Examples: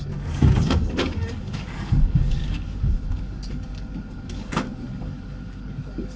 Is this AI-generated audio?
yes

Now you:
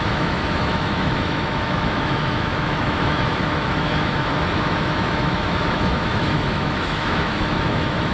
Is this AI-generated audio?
yes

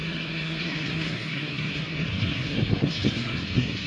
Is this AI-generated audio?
yes